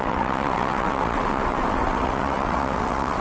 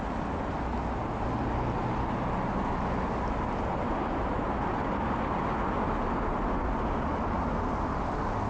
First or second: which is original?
second